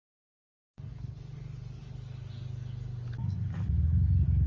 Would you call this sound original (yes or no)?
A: yes